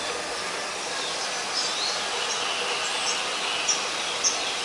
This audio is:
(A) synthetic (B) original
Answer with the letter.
B